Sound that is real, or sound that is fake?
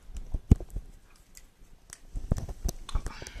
real